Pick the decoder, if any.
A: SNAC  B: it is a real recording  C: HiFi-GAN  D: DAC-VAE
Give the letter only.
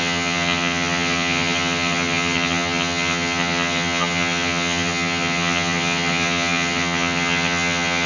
C